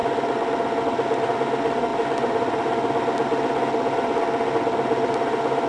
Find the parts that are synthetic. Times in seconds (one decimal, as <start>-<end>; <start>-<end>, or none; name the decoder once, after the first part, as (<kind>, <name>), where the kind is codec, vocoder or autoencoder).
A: none